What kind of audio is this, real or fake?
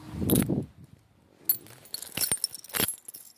real